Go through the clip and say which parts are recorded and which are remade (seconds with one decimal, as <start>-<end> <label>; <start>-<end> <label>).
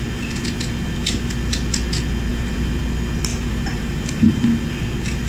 0.0-2.3 recorded; 2.3-2.8 remade; 2.8-3.3 recorded; 3.3-4.4 remade; 4.4-5.3 recorded